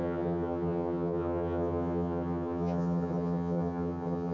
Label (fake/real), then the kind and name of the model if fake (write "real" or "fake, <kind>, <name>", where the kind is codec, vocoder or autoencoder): fake, vocoder, HiFi-GAN